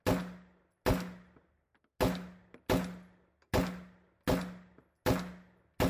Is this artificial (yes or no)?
no